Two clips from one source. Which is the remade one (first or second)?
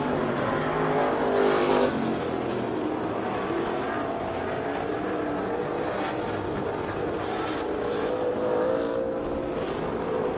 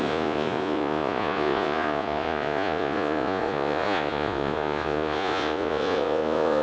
second